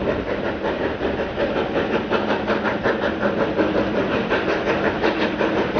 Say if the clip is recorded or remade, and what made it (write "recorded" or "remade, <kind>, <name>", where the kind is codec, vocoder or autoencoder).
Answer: recorded